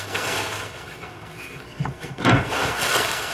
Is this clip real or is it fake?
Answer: fake